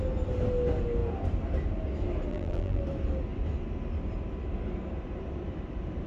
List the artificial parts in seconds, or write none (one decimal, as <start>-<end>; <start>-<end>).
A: 2.3-2.8